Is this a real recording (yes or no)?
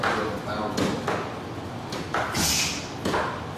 yes